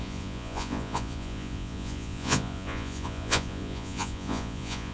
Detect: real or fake fake